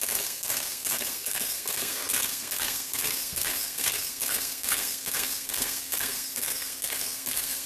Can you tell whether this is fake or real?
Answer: fake